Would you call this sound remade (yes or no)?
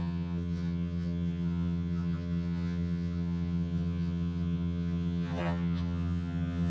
yes